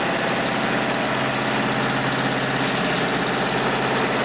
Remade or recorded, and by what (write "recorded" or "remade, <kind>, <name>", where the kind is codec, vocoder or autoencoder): recorded